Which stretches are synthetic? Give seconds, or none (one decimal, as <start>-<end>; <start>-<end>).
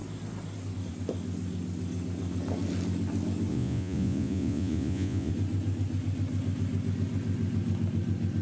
3.5-5.3